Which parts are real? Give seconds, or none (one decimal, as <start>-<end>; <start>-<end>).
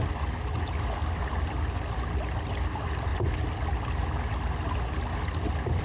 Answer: 0.0-5.8